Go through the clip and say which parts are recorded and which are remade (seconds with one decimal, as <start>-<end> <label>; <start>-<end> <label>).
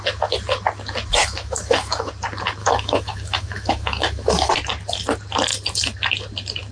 0.0-1.2 recorded; 1.2-2.1 remade; 2.1-2.6 recorded; 2.6-4.5 remade; 4.5-6.7 recorded